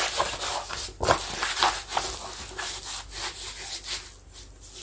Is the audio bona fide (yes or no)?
yes